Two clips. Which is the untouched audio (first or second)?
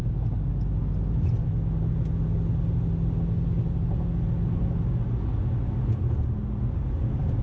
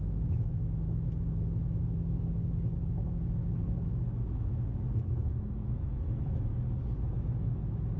first